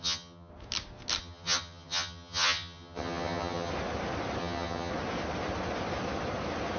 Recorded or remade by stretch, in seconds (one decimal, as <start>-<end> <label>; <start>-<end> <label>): 0.0-0.5 remade; 0.5-1.2 recorded; 1.2-3.7 remade; 3.7-4.4 recorded; 4.4-4.9 remade; 4.9-6.8 recorded